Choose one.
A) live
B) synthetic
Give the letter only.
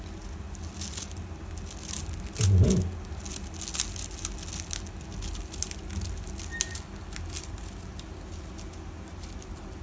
A